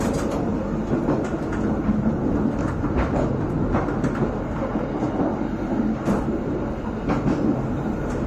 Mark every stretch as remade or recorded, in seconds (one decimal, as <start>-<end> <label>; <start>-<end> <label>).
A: 0.0-8.3 recorded